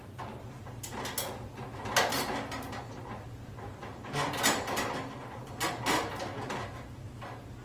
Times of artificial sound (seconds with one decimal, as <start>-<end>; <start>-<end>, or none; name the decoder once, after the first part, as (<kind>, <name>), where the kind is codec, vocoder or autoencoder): none